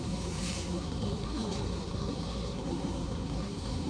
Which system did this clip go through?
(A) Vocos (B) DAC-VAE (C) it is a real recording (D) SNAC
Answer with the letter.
D